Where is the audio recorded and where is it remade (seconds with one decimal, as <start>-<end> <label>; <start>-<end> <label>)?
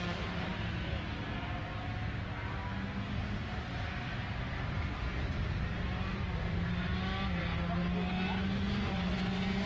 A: 0.0-9.7 recorded